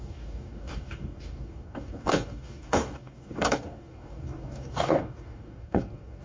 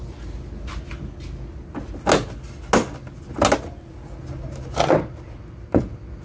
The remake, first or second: first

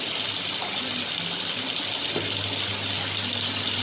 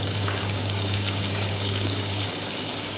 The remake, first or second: second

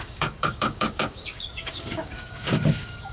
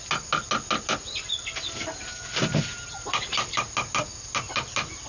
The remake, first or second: first